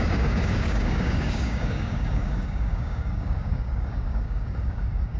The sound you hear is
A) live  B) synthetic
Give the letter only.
B